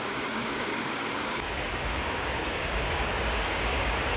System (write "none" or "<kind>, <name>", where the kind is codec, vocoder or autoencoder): codec, DAC